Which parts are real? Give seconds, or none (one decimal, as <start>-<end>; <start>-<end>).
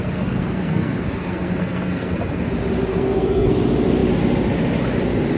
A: 2.5-2.9; 3.5-5.4